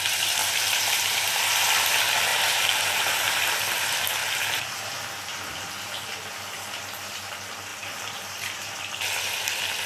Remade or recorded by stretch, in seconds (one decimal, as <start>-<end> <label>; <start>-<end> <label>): 0.0-0.4 recorded; 0.4-1.4 remade; 1.4-2.3 recorded; 2.3-3.3 remade; 3.3-4.2 recorded; 4.2-4.9 remade; 4.9-7.7 recorded; 7.7-8.8 remade; 8.8-9.9 recorded